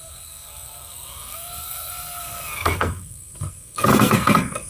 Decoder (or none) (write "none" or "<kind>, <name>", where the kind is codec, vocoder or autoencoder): codec, SNAC